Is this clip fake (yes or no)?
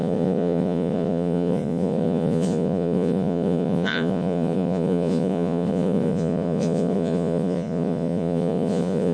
yes